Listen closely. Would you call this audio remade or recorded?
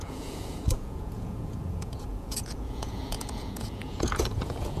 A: remade